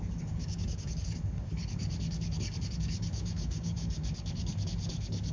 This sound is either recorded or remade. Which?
remade